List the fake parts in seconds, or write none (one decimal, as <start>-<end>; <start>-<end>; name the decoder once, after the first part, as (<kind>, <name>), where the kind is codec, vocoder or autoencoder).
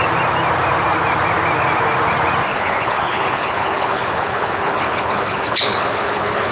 2.5-6.5 (codec, HILCodec)